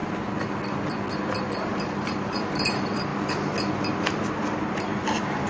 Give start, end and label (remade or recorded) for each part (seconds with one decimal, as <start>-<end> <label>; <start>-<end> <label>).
0.0-1.4 recorded; 1.4-3.1 remade; 3.1-3.7 recorded; 3.7-5.5 remade